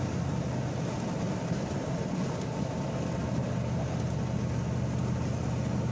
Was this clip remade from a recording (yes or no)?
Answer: no